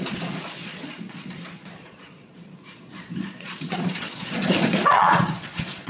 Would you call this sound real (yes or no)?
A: no